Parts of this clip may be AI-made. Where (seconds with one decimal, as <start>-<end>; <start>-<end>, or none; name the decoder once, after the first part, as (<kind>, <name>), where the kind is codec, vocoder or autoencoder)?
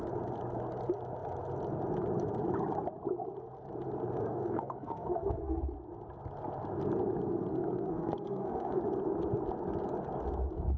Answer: 4.2-5.6 (codec, SNAC); 7.5-8.8